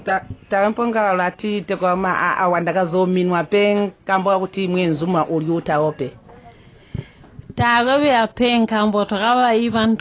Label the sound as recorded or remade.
recorded